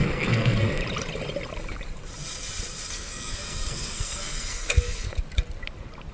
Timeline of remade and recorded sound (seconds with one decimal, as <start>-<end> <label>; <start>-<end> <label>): 0.0-0.8 remade; 0.8-2.9 recorded; 2.9-5.1 remade; 5.1-6.1 recorded